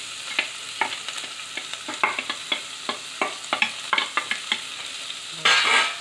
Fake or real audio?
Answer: real